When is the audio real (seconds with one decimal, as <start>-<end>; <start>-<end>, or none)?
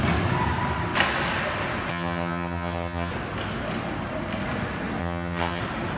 0.0-1.9; 3.1-5.0; 5.6-6.0